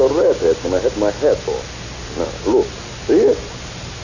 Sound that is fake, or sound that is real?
real